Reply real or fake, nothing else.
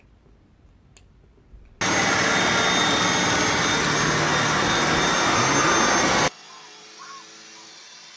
real